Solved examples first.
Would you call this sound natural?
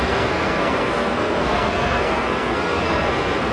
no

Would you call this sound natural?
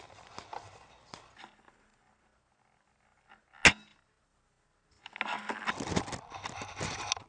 yes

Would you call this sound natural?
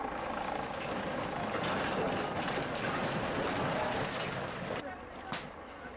yes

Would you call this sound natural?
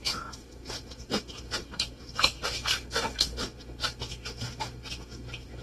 no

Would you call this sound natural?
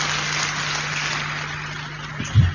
yes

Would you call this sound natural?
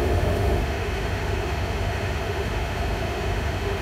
no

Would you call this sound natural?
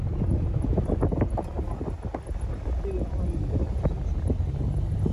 yes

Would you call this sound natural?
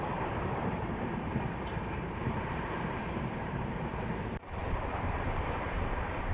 no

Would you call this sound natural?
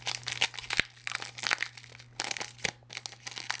yes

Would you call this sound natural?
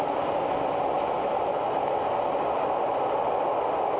yes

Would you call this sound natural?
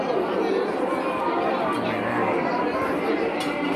yes